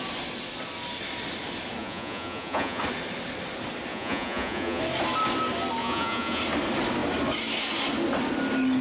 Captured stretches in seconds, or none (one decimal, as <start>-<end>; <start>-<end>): 0.0-1.8; 2.8-3.9; 4.8-5.8; 6.4-8.8